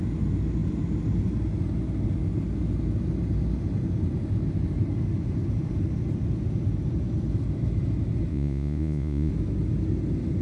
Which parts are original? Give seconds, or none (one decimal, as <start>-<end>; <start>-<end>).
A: 0.0-8.3; 9.3-10.4